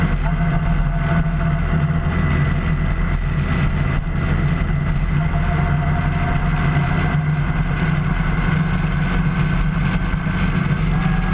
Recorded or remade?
recorded